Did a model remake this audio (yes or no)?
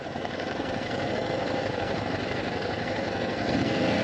yes